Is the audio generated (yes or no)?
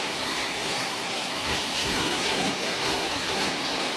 yes